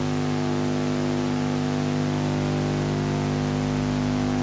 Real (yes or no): yes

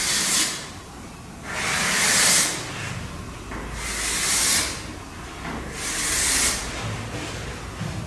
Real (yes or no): yes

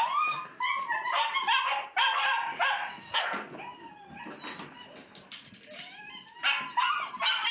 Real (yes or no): yes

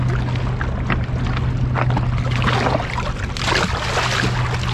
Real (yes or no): yes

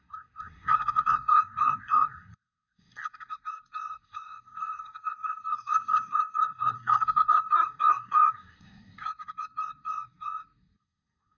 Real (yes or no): no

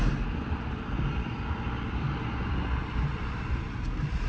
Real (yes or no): yes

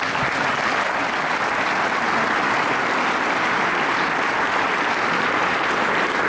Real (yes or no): yes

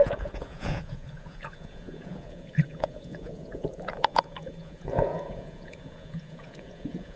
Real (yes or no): no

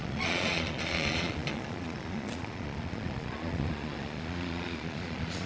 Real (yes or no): no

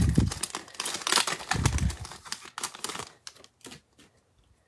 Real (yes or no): yes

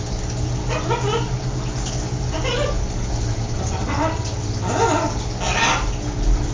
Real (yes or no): yes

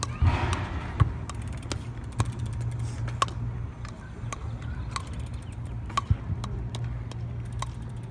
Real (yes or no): yes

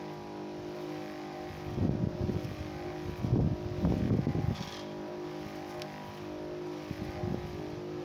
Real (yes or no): yes